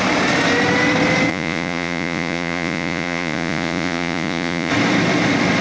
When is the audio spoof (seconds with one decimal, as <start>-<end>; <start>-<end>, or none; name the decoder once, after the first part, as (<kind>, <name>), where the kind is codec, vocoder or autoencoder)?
1.3-4.7 (vocoder, Vocos)